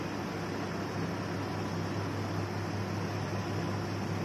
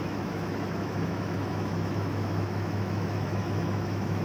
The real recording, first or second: first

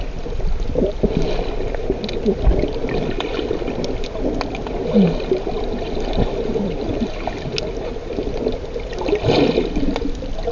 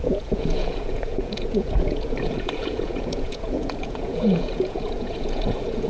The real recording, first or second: first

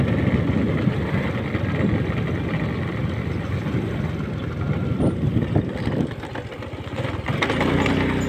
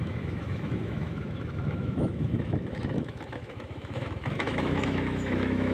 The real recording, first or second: first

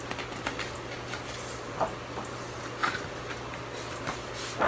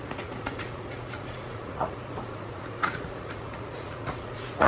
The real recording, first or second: first